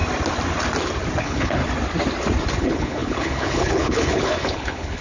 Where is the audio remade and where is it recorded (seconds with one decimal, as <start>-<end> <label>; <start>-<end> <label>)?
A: 0.0-1.2 recorded; 1.2-1.6 remade; 1.6-2.6 recorded; 2.6-5.0 remade